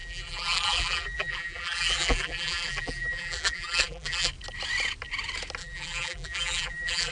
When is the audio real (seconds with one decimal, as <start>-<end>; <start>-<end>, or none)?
4.3-5.6